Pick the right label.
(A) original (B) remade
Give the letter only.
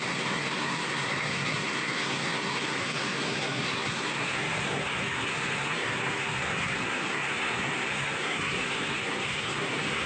B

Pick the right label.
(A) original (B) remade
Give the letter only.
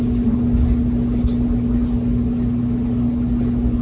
A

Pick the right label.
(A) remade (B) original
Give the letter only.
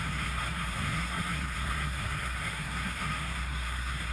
A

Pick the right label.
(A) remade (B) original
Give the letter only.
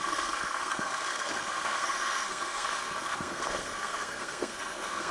A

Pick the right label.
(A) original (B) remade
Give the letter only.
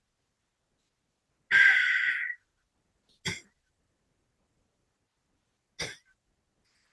A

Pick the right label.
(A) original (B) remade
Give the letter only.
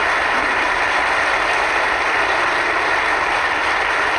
A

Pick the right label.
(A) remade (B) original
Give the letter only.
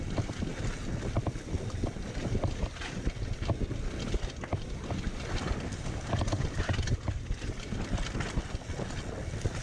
B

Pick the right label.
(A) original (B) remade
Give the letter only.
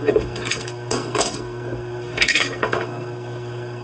B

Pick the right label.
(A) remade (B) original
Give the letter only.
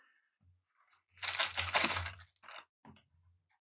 B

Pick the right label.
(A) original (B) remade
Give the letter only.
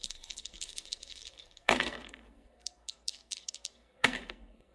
B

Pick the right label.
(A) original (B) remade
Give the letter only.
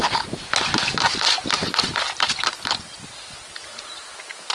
A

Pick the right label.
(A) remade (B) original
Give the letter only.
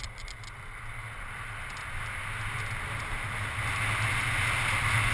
B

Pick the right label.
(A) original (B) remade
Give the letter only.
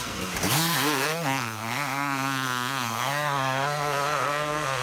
B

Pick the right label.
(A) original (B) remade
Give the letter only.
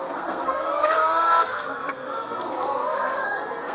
B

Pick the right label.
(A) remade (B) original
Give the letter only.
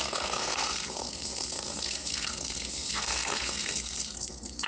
A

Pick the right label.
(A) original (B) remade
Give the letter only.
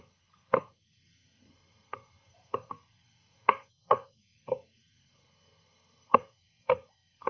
B